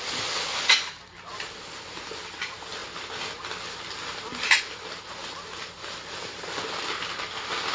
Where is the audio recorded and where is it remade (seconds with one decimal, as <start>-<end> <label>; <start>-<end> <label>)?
0.0-7.7 recorded